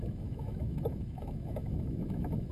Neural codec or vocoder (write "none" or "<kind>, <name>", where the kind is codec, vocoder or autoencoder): autoencoder, DAC-VAE